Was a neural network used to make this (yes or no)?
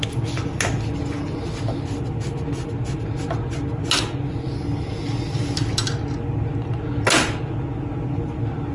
no